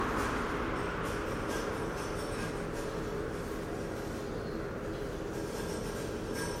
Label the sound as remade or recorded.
recorded